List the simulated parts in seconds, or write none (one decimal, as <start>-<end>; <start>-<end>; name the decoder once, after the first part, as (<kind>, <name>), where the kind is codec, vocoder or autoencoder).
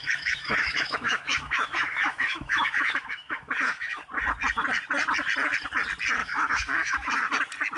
0.0-4.0 (autoencoder, DAC-VAE); 6.2-7.1